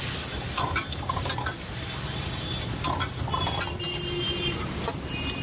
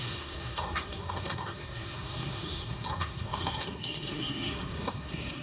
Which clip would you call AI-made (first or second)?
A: second